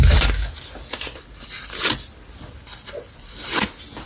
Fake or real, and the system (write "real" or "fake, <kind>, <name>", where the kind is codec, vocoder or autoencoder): real